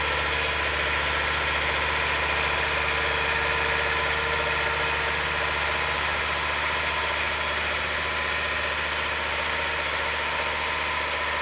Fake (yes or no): no